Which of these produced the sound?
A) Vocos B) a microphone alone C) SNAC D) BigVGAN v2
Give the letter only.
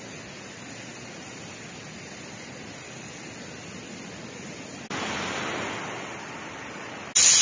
B